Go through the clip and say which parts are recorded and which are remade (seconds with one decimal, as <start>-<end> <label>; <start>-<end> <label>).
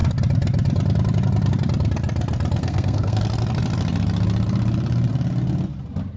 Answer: 0.0-2.6 recorded; 2.6-3.2 remade; 3.2-6.2 recorded